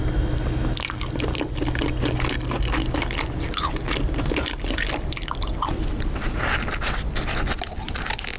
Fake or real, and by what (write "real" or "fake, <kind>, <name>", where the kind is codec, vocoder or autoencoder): real